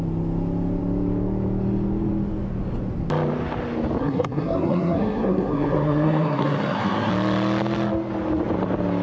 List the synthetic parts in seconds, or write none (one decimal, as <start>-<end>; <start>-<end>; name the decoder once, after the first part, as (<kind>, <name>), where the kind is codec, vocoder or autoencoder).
4.0-7.1 (codec, SNAC)